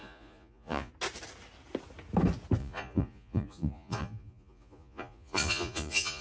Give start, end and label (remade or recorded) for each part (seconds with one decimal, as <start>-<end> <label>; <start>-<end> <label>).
0.0-0.9 remade; 0.9-2.6 recorded; 2.6-6.2 remade